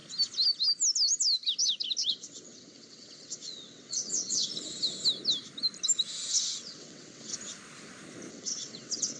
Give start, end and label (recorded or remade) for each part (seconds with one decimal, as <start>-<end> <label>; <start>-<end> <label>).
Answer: 0.0-2.1 recorded; 2.1-4.5 remade; 4.5-6.3 recorded; 6.3-7.3 remade; 7.3-8.3 recorded; 8.3-9.2 remade